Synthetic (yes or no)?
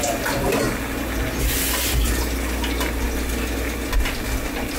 no